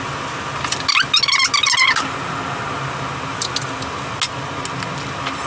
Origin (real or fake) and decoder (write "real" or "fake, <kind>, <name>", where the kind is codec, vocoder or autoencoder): real